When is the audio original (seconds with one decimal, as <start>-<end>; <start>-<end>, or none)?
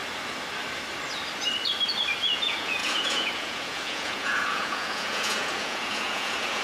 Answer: 0.0-2.2